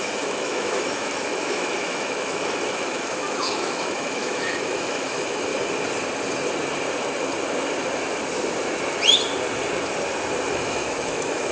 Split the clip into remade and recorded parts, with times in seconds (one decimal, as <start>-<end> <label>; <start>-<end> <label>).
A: 0.0-5.5 remade; 5.5-10.5 recorded; 10.5-11.5 remade